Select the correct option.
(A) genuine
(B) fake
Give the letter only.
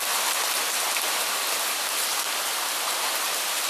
A